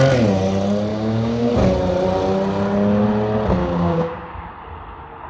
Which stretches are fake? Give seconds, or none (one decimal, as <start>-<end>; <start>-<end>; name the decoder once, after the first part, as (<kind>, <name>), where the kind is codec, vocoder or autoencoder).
0.9-1.5 (codec, DAC); 3.6-4.3